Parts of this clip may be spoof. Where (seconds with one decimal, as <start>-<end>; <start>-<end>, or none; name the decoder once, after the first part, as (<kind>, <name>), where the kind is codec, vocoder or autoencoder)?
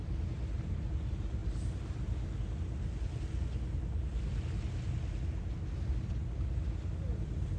none